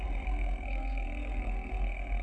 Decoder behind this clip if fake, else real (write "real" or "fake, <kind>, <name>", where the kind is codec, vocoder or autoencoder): fake, codec, SNAC